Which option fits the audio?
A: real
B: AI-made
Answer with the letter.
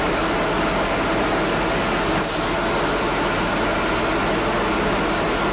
A